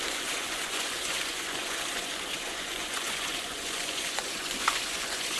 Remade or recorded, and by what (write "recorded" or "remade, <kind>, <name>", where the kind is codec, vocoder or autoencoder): remade, vocoder, Vocos